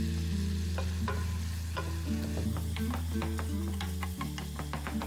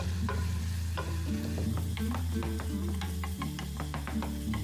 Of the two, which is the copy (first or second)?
second